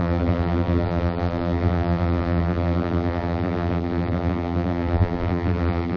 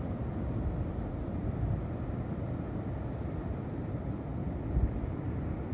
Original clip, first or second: second